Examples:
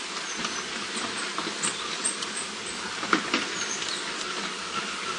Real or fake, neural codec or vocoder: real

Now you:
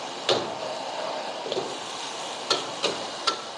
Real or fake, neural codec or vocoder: fake, vocoder, BigVGAN v2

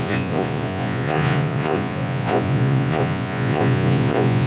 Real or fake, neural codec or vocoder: fake, vocoder, Vocos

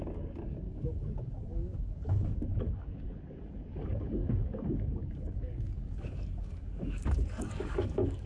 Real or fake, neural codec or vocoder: fake, codec, DAC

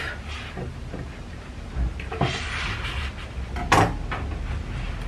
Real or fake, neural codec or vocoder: real